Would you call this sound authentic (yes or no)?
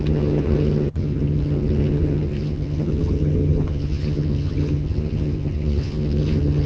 no